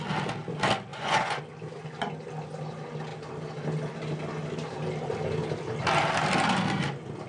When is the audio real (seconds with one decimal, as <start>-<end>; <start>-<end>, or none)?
0.0-0.9; 1.4-7.3